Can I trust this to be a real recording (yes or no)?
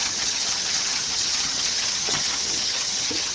no